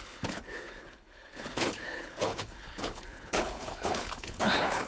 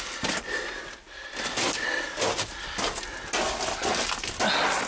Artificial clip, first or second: first